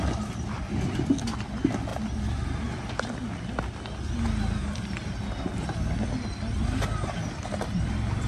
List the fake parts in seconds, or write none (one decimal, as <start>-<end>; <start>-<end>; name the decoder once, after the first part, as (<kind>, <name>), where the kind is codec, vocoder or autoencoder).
none